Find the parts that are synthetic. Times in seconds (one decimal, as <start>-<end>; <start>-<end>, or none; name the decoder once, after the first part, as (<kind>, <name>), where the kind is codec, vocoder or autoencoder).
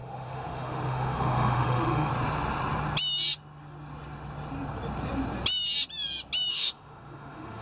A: 0.0-2.1 (autoencoder, DAC-VAE); 6.5-7.6